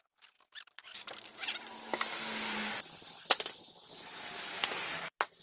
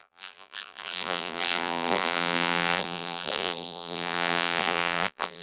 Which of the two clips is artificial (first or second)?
second